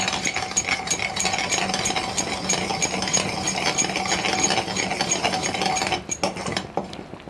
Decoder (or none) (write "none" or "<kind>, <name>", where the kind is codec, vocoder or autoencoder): none